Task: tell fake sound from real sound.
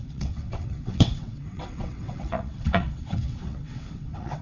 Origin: fake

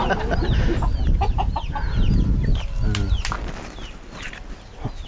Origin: real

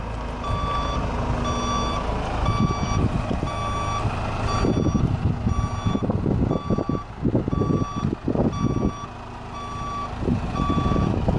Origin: real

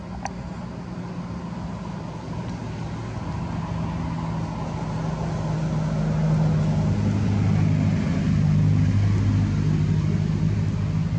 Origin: real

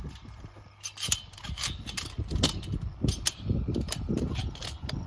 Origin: real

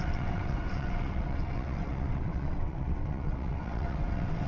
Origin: fake